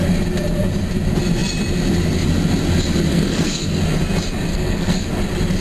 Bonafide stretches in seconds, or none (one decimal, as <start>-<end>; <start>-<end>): 0.0-3.1; 3.8-4.5; 5.1-5.6